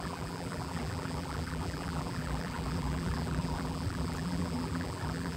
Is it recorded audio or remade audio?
remade